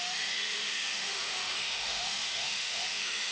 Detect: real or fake fake